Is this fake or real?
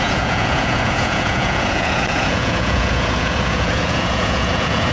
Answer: fake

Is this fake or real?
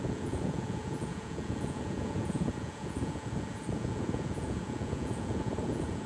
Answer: fake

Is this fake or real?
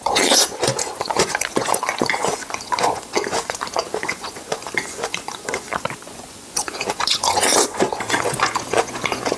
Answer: fake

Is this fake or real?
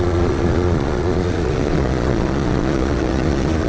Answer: fake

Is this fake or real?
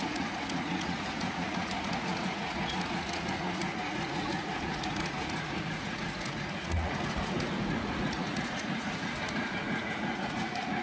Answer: fake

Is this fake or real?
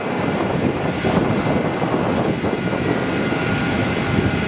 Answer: real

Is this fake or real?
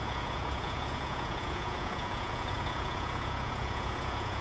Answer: fake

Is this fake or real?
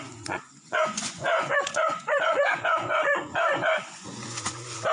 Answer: fake